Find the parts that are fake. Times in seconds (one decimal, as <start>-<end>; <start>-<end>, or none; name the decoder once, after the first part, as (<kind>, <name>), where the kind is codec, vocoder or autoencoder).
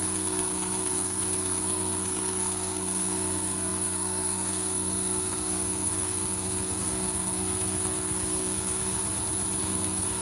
0.0-9.0 (codec, SNAC); 9.6-10.2